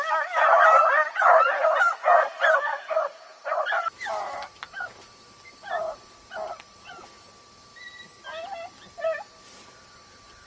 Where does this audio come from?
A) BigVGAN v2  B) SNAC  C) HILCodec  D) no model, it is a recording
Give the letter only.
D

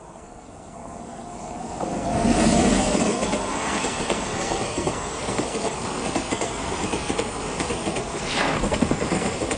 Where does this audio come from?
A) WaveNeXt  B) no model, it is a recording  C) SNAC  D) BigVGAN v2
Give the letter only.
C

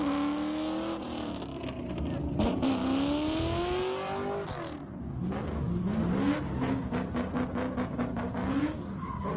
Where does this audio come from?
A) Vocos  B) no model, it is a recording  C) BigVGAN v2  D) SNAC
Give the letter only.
B